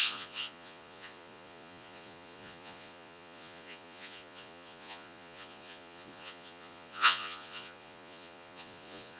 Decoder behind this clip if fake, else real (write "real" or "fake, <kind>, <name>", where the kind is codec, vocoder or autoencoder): fake, vocoder, Vocos